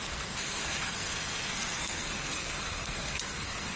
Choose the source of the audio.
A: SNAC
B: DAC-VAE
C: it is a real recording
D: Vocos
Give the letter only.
A